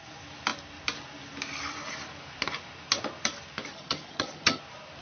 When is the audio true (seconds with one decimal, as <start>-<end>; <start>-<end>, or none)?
0.0-3.7; 4.6-5.0

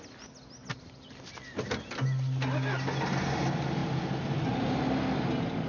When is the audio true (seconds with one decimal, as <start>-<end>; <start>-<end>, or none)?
0.0-5.7